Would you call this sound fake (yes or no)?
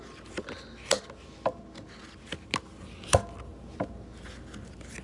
no